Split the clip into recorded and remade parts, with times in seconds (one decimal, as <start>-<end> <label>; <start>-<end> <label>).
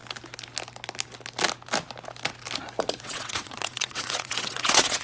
0.0-3.0 recorded; 3.0-5.0 remade